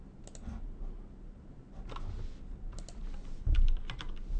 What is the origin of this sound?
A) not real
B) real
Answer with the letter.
B